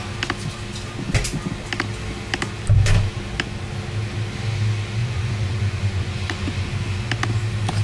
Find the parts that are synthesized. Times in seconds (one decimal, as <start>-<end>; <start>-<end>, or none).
5.0-6.7